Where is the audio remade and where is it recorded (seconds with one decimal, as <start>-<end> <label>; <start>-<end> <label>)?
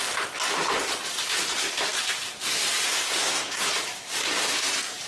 0.0-2.9 recorded; 2.9-3.7 remade; 3.7-5.1 recorded